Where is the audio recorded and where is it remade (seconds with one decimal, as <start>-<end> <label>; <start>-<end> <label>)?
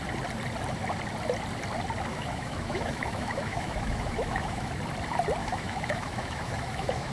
0.0-2.1 recorded; 2.1-4.7 remade; 4.7-5.4 recorded; 5.4-7.1 remade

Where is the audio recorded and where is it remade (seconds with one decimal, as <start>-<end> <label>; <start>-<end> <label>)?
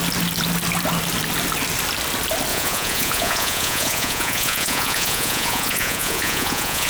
0.0-2.5 recorded; 2.5-6.9 remade